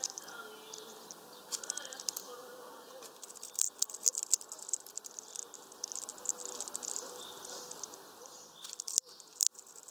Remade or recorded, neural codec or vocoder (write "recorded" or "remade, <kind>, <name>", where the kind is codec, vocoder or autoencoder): recorded